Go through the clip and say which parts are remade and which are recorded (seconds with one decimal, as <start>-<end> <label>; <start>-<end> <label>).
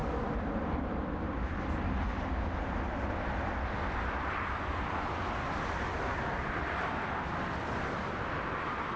0.0-9.0 recorded